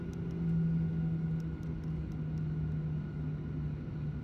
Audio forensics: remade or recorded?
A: recorded